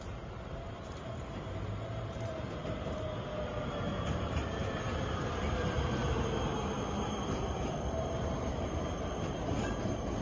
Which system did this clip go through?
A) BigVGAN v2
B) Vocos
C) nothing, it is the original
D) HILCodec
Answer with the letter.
A